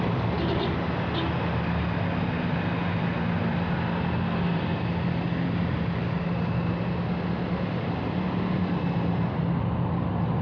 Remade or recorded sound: recorded